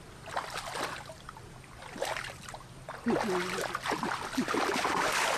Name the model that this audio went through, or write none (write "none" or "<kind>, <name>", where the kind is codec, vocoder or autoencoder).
none